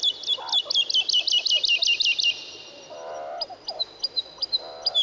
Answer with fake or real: real